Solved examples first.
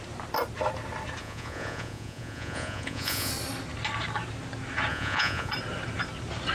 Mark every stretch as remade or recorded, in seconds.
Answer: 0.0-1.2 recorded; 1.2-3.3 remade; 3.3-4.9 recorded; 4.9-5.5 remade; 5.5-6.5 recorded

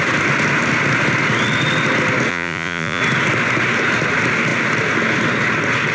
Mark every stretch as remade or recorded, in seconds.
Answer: 0.0-2.3 recorded; 2.3-3.0 remade; 3.0-5.9 recorded

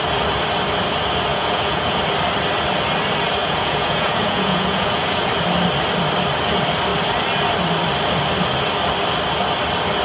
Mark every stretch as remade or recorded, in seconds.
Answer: 0.0-1.3 recorded; 1.3-2.0 remade; 2.0-3.4 recorded; 3.4-5.3 remade; 5.3-10.0 recorded

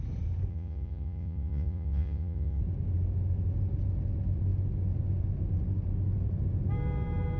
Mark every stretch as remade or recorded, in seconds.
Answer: 0.0-0.5 recorded; 0.5-2.6 remade; 2.6-7.4 recorded

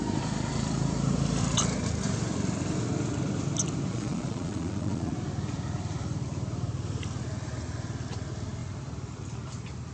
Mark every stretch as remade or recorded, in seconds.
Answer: 0.0-3.9 recorded; 3.9-5.1 remade; 5.1-9.9 recorded

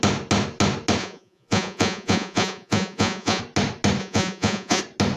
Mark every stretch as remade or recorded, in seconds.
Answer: 0.0-1.0 recorded; 1.0-3.4 remade; 3.4-4.0 recorded; 4.0-4.8 remade; 4.8-5.2 recorded